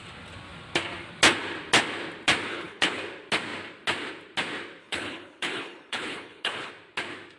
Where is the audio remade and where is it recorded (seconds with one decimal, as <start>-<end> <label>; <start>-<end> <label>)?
0.0-2.5 recorded; 2.5-3.0 remade; 3.0-4.8 recorded; 4.8-6.7 remade; 6.7-7.4 recorded